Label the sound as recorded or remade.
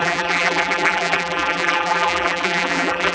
remade